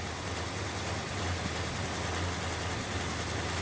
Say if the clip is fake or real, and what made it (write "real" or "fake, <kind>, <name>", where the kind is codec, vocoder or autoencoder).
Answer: real